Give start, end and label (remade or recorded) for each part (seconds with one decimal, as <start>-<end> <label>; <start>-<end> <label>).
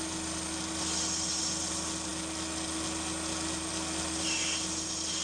0.0-5.2 recorded